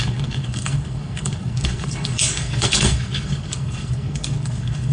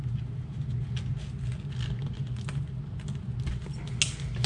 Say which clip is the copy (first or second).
first